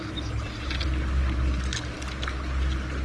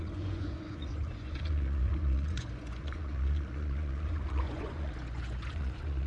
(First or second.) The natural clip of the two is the first